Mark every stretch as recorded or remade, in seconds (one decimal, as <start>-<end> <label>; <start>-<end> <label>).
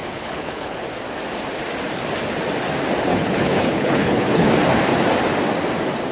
0.0-0.8 remade; 0.8-3.1 recorded; 3.1-4.5 remade; 4.5-6.1 recorded